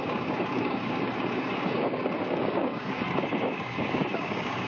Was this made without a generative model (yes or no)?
no